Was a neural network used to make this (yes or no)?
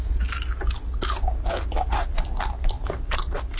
no